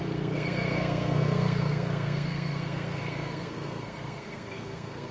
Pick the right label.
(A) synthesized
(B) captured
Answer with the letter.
A